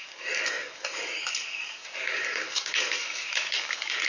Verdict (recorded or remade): remade